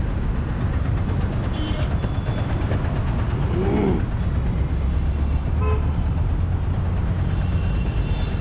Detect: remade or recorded recorded